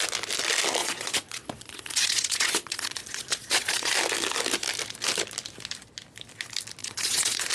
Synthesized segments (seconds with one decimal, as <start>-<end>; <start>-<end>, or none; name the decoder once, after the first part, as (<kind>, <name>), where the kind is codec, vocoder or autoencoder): 0.8-3.9 (vocoder, Vocos); 6.8-7.5